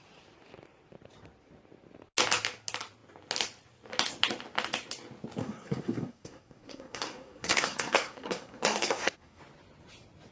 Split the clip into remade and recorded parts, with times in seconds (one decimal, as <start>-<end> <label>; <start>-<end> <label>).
0.0-5.4 recorded; 5.4-9.4 remade; 9.4-10.3 recorded